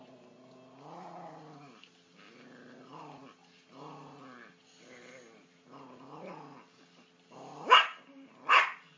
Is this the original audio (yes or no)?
yes